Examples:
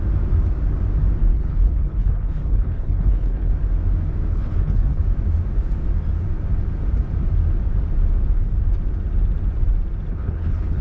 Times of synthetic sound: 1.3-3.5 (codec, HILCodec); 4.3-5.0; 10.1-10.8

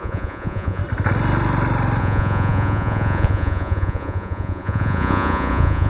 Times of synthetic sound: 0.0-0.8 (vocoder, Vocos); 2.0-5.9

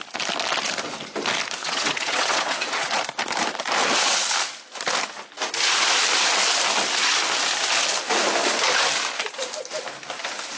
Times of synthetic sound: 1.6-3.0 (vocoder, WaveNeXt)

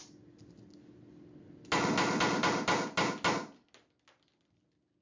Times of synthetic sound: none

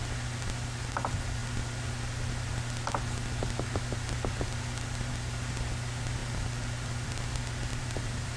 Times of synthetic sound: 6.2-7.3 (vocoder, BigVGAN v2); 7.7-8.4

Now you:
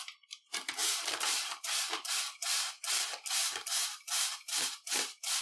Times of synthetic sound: 0.8-2.8 (vocoder, BigVGAN v2); 3.4-5.4